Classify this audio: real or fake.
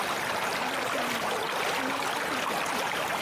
real